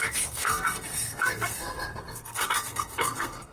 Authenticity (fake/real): fake